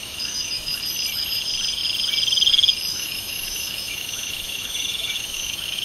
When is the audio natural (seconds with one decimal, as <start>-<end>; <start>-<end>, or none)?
0.8-2.9